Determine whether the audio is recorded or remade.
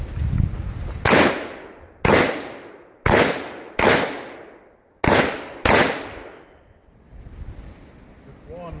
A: recorded